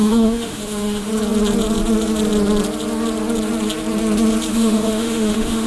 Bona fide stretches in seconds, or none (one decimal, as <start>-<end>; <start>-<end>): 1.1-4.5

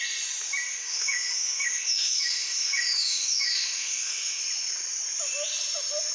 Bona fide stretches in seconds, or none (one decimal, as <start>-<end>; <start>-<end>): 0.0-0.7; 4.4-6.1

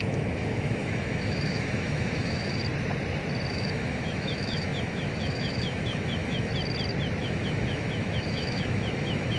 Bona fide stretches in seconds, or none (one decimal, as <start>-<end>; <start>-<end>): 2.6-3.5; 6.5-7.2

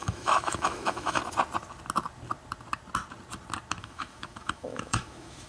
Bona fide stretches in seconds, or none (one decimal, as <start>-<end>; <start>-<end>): 1.2-3.8